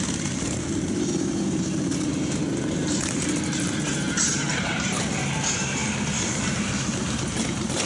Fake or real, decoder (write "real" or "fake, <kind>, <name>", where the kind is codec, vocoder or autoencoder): fake, vocoder, BigVGAN v2